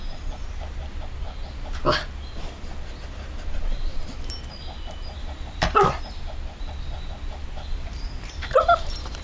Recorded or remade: recorded